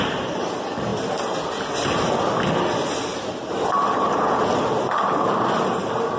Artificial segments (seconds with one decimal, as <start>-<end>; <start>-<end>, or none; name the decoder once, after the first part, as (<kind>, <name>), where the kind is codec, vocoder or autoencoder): 0.0-0.9 (vocoder, BigVGAN v2); 4.6-6.2